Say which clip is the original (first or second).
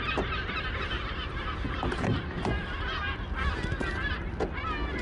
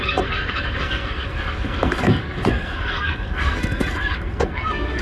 first